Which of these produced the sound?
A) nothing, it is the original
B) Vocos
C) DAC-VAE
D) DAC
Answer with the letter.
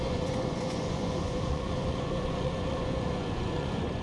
B